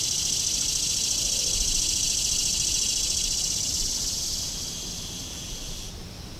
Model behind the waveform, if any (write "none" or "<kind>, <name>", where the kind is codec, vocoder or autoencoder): none